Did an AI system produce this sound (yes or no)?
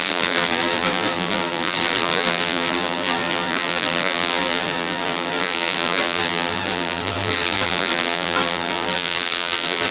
yes